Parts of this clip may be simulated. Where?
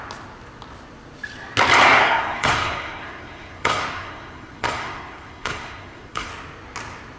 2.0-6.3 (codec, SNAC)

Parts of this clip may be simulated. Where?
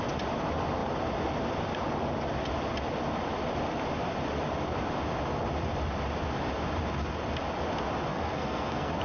8.1-9.0 (codec, SNAC)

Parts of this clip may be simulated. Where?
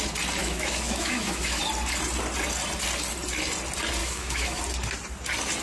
0.4-1.6 (autoencoder, DAC-VAE); 4.0-4.6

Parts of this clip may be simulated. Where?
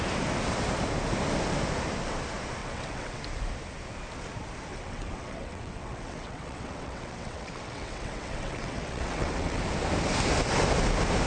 2.6-3.2 (vocoder, WaveNeXt); 4.7-9.6